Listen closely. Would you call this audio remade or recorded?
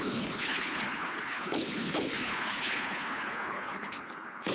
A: remade